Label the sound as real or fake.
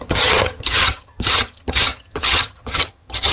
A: fake